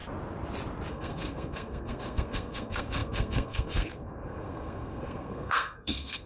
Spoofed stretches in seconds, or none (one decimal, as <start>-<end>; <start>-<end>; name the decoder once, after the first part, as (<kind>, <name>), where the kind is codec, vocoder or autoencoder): 0.9-6.3 (codec, SNAC)